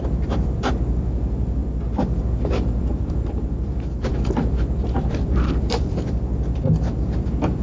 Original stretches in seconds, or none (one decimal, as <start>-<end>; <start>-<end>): none